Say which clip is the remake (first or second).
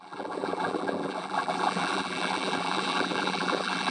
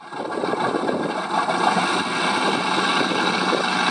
first